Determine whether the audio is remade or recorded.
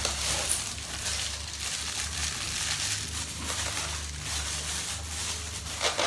recorded